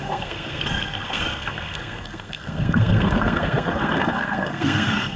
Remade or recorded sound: remade